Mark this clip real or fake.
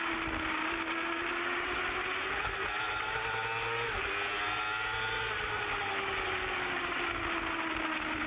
real